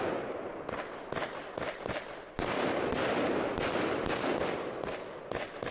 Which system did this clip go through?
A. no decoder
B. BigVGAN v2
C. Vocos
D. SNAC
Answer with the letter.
A